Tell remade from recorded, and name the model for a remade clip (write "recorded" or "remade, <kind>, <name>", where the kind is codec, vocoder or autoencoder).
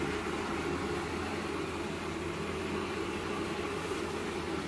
recorded